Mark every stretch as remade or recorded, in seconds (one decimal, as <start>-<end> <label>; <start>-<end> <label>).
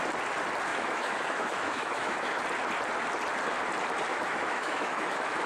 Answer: 0.0-0.7 recorded; 0.7-2.4 remade; 2.4-4.1 recorded; 4.1-5.5 remade